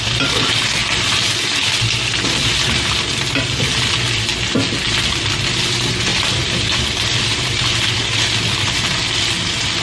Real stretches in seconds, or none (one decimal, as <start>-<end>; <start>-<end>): 0.0-0.8; 1.3-6.1; 7.4-9.8